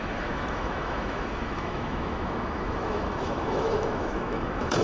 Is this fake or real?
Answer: fake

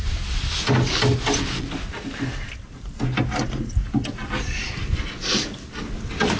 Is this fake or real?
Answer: real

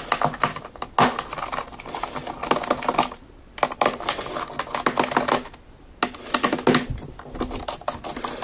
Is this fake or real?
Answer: real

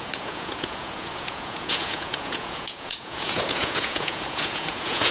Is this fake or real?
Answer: fake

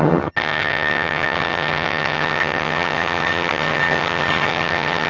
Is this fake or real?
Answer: fake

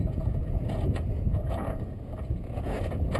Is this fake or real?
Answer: fake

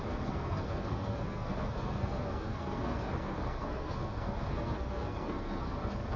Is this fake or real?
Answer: fake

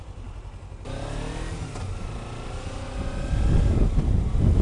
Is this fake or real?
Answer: real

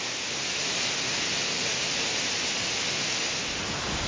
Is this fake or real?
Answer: real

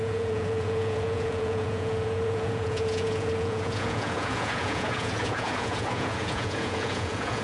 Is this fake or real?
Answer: fake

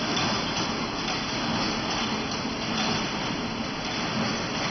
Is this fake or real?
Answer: real